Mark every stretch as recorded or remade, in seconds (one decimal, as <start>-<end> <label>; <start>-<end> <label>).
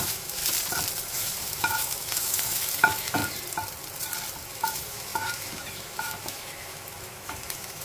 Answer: 0.0-0.4 remade; 0.4-1.0 recorded; 1.0-3.2 remade; 3.2-4.5 recorded; 4.5-7.8 remade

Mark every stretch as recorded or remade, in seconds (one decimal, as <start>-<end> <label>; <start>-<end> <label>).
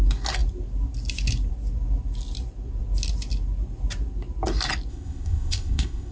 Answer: 0.0-4.9 recorded; 4.9-6.1 remade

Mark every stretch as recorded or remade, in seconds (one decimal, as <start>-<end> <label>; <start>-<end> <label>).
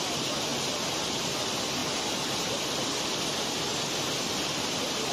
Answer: 0.0-5.1 recorded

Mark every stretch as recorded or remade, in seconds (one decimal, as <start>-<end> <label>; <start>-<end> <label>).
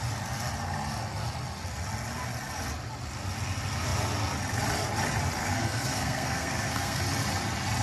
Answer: 0.0-5.4 recorded; 5.4-7.0 remade; 7.0-7.8 recorded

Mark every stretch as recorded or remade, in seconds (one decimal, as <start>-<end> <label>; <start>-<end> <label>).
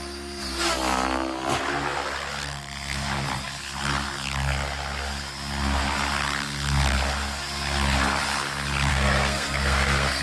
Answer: 0.0-8.9 recorded; 8.9-10.2 remade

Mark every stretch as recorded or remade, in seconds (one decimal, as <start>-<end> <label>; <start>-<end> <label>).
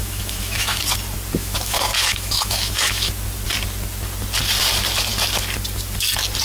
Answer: 0.0-0.8 remade; 0.8-1.4 recorded; 1.4-3.1 remade; 3.1-6.4 recorded